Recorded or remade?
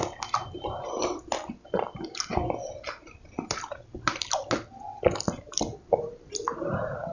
recorded